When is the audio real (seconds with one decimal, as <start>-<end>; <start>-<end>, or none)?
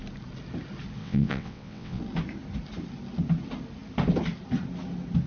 0.0-1.0; 2.0-5.3